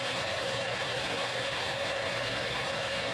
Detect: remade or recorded remade